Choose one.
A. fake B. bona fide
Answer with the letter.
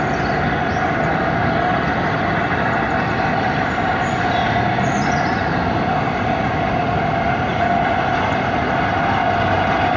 B